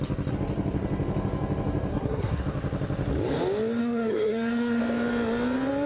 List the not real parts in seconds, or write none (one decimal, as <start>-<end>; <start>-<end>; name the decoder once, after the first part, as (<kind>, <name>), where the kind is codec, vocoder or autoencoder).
1.9-2.4 (codec, SNAC); 3.8-4.8